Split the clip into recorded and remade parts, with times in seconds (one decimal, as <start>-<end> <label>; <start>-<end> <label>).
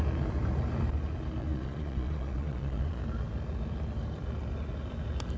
0.0-1.4 recorded; 1.4-3.0 remade; 3.0-5.4 recorded